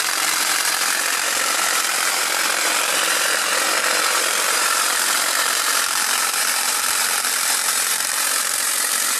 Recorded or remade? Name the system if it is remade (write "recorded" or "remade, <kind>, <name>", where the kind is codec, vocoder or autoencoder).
remade, vocoder, BigVGAN v2